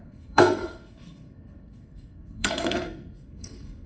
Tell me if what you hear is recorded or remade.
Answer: remade